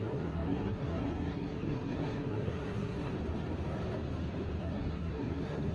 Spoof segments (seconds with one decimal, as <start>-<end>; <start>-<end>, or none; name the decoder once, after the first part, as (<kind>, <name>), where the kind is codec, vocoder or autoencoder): 0.0-3.1 (codec, SNAC); 4.6-5.7